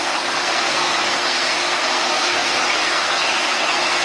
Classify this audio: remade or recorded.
remade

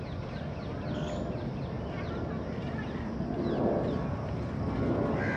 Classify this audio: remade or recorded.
recorded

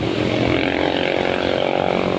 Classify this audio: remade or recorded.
recorded